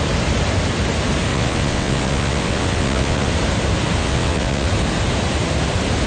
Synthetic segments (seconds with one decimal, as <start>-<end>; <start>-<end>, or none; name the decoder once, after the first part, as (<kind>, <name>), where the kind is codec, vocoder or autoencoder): 1.3-3.3 (vocoder, WaveNeXt); 4.0-4.7